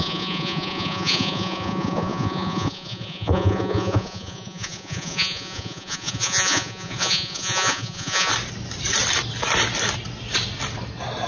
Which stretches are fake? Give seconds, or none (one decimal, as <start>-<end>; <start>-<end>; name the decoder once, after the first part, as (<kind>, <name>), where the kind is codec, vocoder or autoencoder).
0.0-8.3 (vocoder, Vocos)